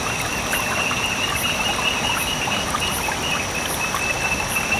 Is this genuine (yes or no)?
yes